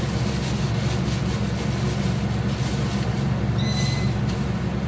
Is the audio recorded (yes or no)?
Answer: yes